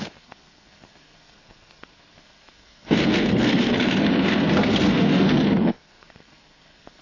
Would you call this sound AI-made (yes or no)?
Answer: yes